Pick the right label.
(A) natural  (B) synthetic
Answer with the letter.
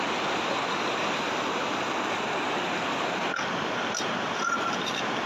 A